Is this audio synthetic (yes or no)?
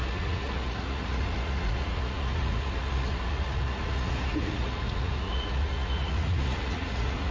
yes